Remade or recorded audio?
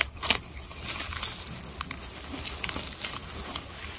recorded